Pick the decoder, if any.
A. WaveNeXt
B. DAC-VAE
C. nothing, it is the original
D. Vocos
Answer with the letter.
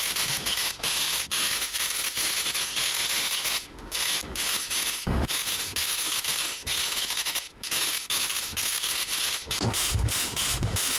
B